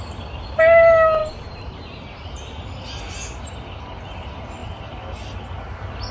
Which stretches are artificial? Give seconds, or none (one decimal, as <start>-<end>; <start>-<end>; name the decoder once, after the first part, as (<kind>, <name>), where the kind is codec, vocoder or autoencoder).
none